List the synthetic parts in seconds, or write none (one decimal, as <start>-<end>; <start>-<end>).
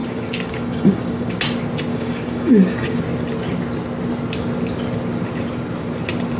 0.0-1.3; 1.9-3.0